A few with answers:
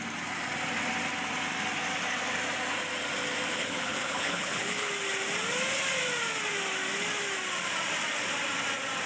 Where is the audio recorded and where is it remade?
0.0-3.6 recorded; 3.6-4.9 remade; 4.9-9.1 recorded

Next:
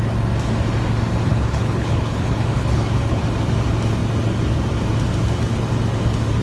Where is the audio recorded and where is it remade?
0.0-1.3 recorded; 1.3-3.2 remade; 3.2-6.4 recorded

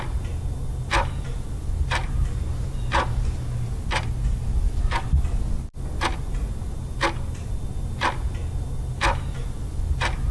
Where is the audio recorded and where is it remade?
0.0-10.3 recorded

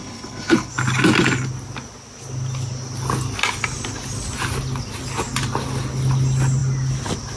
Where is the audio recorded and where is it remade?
0.0-0.7 remade; 0.7-7.4 recorded

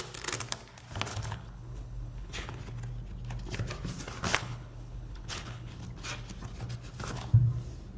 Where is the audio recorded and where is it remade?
0.0-1.1 recorded; 1.1-2.6 remade; 2.6-4.3 recorded; 4.3-5.7 remade; 5.7-8.0 recorded

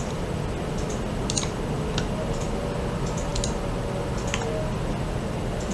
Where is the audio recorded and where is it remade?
0.0-5.7 recorded

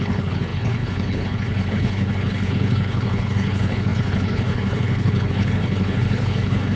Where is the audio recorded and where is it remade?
0.0-6.8 remade

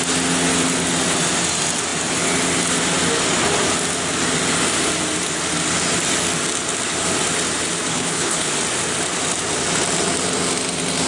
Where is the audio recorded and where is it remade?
0.0-7.9 recorded; 7.9-8.5 remade; 8.5-11.1 recorded